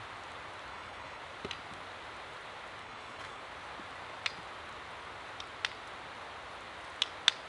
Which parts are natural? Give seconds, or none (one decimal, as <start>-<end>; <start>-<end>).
0.0-0.7; 1.2-2.8; 3.4-7.5